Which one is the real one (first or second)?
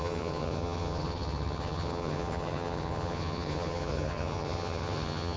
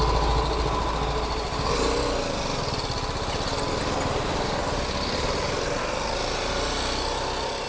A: second